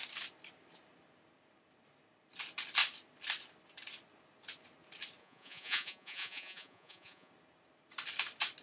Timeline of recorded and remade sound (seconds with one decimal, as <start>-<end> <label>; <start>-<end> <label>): 0.0-5.2 recorded; 5.2-7.3 remade; 7.3-8.6 recorded